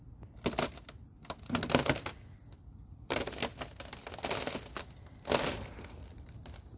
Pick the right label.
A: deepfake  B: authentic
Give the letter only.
B